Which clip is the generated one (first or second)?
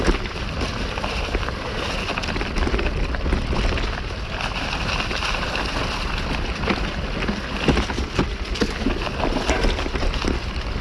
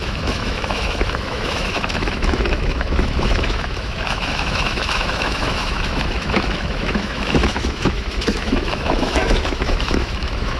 second